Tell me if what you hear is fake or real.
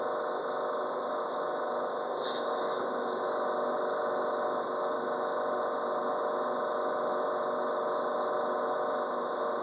real